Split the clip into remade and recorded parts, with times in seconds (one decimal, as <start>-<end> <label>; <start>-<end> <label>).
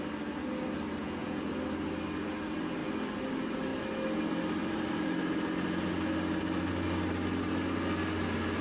0.0-1.0 recorded; 1.0-1.5 remade; 1.5-8.6 recorded